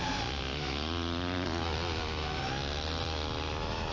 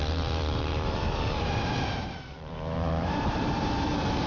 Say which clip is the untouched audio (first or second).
first